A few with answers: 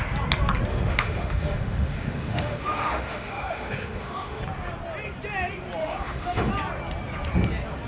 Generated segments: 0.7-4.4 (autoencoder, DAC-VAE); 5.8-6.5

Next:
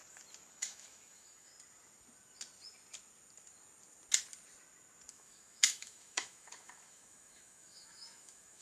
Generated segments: 0.5-1.5 (autoencoder, DAC-VAE); 5.1-8.6

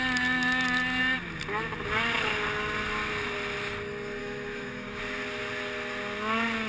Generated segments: 4.2-5.0 (autoencoder, DAC-VAE)

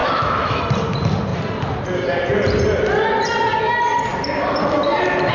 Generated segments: 0.0-0.6 (autoencoder, DAC-VAE)